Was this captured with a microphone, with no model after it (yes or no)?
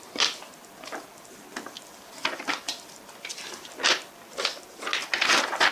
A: yes